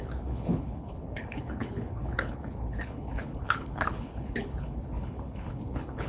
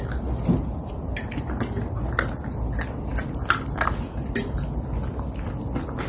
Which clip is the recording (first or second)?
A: second